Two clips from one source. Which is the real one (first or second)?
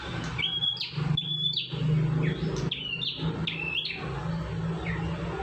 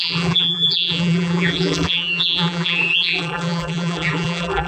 first